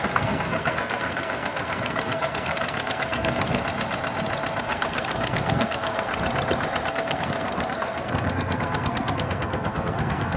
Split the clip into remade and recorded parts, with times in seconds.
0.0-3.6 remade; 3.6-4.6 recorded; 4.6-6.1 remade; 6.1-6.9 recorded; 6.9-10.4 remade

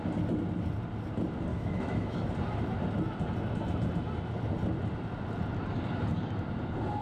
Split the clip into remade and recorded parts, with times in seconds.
0.0-1.5 recorded; 1.5-2.3 remade; 2.3-7.0 recorded

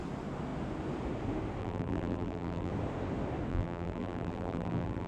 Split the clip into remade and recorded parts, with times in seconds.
0.0-1.6 recorded; 1.6-2.7 remade; 2.7-3.5 recorded; 3.5-5.1 remade

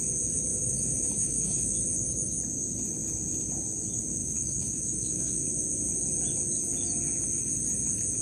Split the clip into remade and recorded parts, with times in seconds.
0.0-0.5 recorded; 0.5-1.8 remade; 1.8-4.2 recorded; 4.2-5.5 remade; 5.5-8.2 recorded

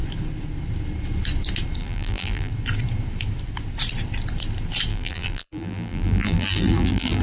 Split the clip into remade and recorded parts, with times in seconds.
0.0-1.8 recorded; 1.8-2.5 remade; 2.5-4.9 recorded; 4.9-7.2 remade